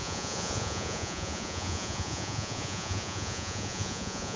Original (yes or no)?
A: no